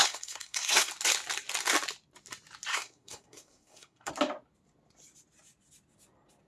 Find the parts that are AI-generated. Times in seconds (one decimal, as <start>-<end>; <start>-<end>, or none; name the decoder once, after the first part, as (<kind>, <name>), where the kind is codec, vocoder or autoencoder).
0.0-0.9 (codec, SNAC); 2.7-4.1